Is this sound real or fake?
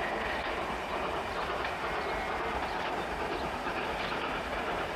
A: real